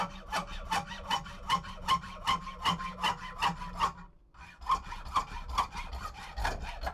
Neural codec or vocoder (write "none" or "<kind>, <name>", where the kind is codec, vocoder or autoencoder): none